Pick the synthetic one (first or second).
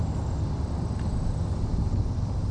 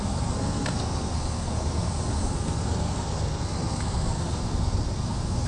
second